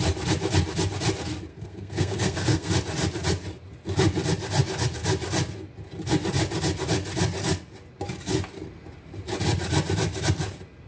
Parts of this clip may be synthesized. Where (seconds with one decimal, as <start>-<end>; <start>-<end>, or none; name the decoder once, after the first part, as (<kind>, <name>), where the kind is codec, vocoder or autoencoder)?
1.5-2.7 (codec, SNAC)

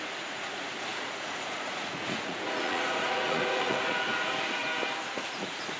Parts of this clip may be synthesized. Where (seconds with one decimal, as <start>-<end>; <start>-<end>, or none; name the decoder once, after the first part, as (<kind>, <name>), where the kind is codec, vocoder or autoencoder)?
0.0-4.6 (vocoder, Vocos); 5.2-5.8

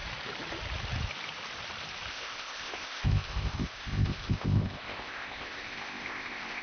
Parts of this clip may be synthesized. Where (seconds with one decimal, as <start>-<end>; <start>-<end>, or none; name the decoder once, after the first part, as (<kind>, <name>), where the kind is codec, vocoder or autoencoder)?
2.1-6.6 (codec, ZipCodec)

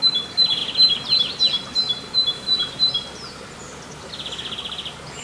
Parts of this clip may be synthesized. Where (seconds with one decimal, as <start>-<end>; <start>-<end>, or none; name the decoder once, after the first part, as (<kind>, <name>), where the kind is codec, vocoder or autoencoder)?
none

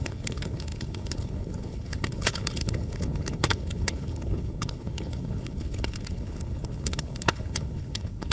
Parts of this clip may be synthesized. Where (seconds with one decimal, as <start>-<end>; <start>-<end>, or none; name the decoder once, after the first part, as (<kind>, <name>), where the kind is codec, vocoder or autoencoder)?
0.0-8.3 (codec, HILCodec)

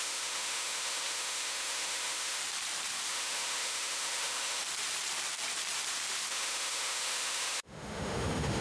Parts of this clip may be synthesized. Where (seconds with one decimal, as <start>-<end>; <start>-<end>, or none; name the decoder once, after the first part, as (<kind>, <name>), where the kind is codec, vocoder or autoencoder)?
0.0-2.4 (autoencoder, DAC-VAE); 3.1-4.6; 6.3-8.6

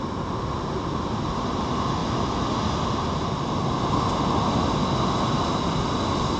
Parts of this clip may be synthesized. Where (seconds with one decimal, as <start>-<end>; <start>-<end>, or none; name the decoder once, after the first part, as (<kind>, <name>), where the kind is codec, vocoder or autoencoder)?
none